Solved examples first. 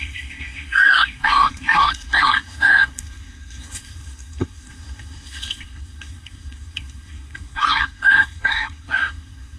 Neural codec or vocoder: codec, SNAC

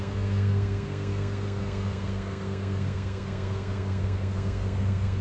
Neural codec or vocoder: codec, SNAC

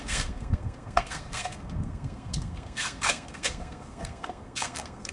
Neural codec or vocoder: codec, SNAC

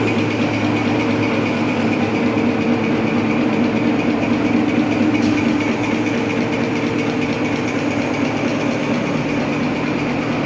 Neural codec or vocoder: none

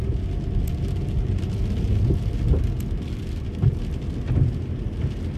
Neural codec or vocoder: none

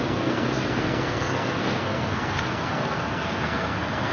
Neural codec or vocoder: codec, SNAC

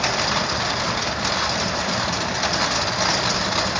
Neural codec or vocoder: none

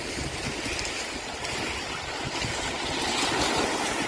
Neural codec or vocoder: none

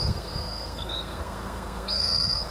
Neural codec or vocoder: codec, SNAC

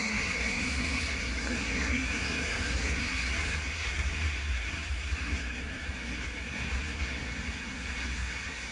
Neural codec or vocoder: codec, SNAC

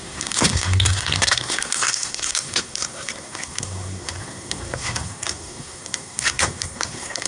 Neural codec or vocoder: codec, SNAC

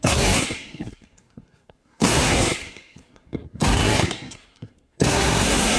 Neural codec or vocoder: codec, SNAC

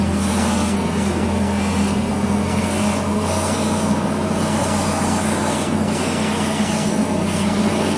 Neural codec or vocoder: codec, SNAC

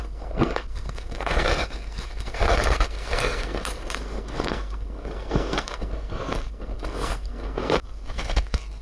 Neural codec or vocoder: codec, SNAC